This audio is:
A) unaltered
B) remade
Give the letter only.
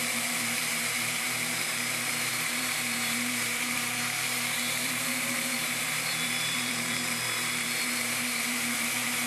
B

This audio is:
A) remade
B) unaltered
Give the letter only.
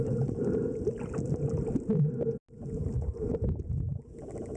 B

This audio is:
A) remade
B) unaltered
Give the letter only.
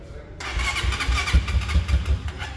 B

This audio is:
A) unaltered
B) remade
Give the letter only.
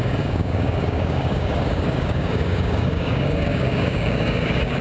B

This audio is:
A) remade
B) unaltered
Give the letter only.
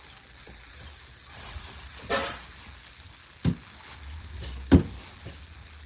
B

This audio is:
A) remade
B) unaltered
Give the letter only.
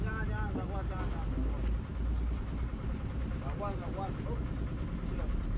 B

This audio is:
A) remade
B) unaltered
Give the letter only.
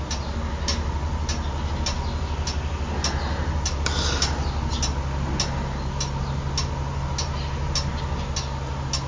B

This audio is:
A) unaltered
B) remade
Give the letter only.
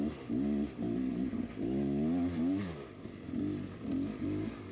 A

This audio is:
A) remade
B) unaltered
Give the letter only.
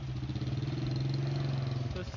B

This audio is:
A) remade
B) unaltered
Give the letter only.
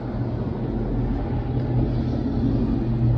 B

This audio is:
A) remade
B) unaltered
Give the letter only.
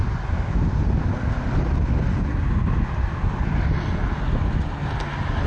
B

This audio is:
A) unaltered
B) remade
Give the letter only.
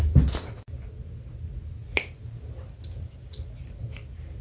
A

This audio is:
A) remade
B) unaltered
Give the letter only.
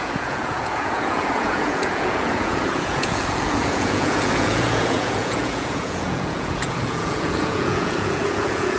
A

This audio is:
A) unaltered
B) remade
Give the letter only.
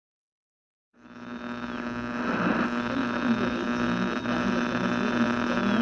A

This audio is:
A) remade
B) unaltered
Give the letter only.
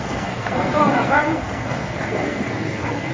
A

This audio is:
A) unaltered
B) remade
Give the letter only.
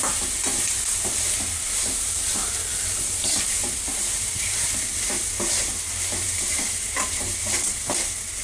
B